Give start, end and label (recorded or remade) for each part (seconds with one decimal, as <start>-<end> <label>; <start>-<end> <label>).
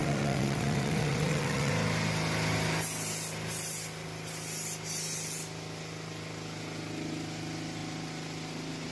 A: 0.0-1.7 remade; 1.7-8.9 recorded